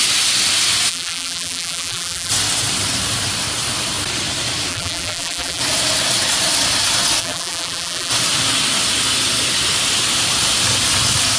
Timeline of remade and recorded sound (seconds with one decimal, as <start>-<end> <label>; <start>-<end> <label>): 0.0-0.9 recorded; 0.9-2.3 remade; 2.3-4.7 recorded; 4.7-5.6 remade; 5.6-7.2 recorded; 7.2-8.1 remade; 8.1-11.4 recorded